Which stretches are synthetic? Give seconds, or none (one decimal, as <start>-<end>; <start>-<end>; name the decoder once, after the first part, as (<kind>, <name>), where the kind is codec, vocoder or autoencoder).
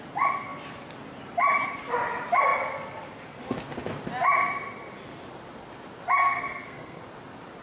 6.2-7.0 (codec, SNAC)